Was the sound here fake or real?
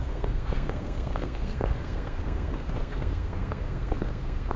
fake